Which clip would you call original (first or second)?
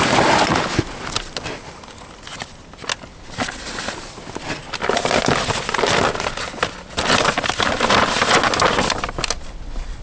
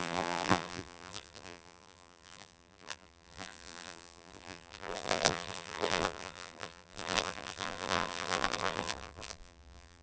first